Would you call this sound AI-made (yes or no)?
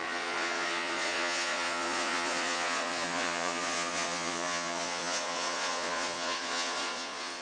yes